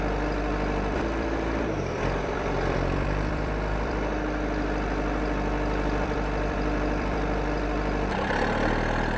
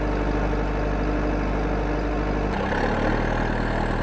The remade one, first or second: first